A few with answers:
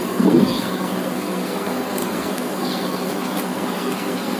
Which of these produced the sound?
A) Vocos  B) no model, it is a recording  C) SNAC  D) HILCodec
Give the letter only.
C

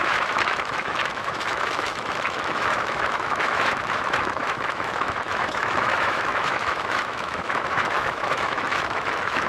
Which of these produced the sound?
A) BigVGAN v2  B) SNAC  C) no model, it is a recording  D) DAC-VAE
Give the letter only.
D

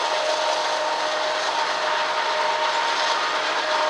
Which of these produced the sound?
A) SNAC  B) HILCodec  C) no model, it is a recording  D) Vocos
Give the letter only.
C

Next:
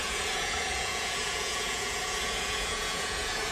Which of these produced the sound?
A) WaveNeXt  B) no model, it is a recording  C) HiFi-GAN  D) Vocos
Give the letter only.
D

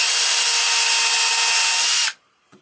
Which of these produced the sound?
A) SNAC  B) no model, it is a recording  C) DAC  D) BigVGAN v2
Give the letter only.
B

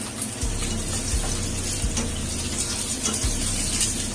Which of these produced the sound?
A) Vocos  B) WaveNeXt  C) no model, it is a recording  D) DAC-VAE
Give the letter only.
C